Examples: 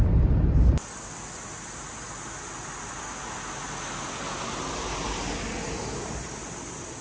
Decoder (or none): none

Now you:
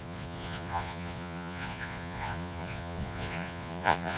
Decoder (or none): vocoder, Vocos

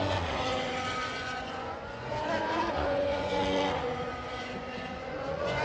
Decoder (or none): vocoder, Vocos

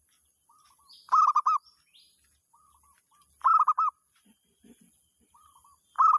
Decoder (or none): none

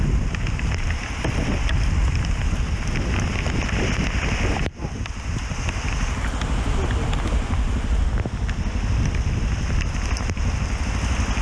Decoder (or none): none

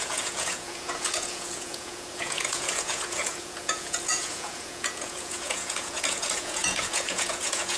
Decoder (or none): vocoder, Vocos